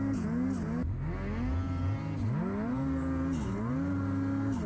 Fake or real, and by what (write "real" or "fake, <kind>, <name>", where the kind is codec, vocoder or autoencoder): real